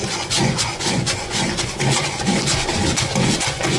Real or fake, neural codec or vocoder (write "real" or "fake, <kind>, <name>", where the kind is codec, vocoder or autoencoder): fake, vocoder, Vocos